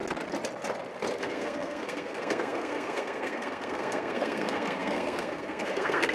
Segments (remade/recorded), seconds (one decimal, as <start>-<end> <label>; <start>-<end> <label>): 0.0-1.2 recorded; 1.2-6.1 remade